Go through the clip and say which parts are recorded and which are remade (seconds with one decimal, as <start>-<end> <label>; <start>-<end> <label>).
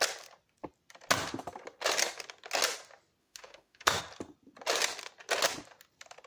0.0-3.2 recorded; 3.2-4.0 remade; 4.0-6.3 recorded